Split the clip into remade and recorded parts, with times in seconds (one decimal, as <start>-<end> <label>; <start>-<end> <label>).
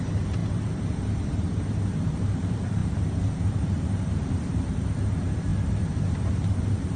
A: 0.0-7.0 remade